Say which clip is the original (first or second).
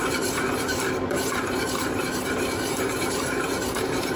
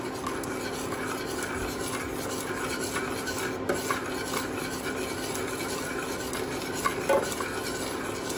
second